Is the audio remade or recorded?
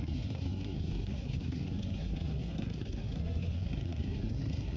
remade